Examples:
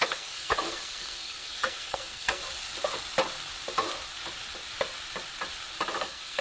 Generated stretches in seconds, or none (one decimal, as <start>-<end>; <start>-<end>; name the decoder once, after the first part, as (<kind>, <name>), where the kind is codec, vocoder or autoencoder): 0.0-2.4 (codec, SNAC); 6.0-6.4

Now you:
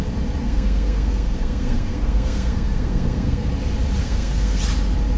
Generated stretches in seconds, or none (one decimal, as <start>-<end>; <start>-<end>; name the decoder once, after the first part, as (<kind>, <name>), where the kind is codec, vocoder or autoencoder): 0.4-3.5 (codec, SNAC); 4.0-4.6

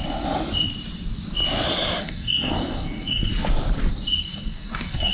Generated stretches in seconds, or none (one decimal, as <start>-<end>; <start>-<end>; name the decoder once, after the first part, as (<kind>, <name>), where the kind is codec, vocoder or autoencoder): 2.0-3.3 (codec, SNAC); 4.2-5.1

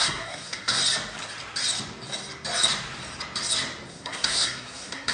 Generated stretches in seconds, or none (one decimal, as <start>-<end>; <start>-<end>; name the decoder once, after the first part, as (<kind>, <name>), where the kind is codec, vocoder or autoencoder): 0.0-0.8 (codec, SNAC); 3.9-5.1